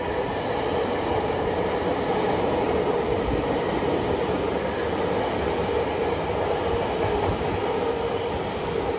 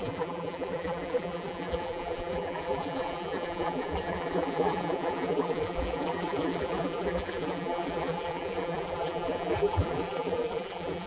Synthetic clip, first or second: second